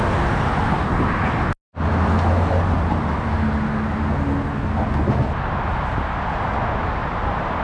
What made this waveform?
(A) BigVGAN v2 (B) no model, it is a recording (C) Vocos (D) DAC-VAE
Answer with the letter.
B